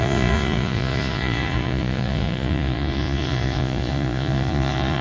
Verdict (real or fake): fake